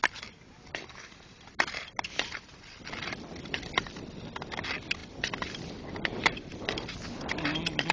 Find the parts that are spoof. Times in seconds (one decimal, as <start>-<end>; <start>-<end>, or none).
none